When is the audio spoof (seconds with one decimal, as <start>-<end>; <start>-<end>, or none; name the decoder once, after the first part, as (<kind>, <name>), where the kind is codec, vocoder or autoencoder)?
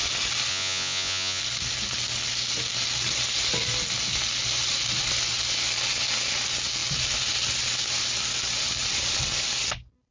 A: 0.5-1.4 (vocoder, Vocos)